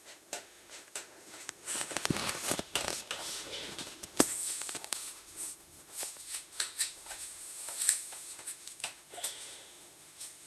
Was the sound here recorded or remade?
remade